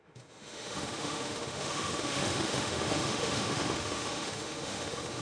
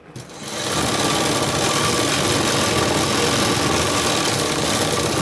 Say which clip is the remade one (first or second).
first